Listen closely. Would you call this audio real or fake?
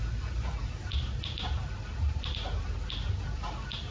real